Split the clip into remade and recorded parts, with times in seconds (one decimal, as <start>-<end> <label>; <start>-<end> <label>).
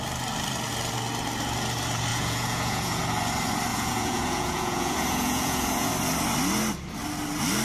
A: 0.0-2.1 recorded; 2.1-3.0 remade; 3.0-3.7 recorded; 3.7-5.9 remade; 5.9-7.6 recorded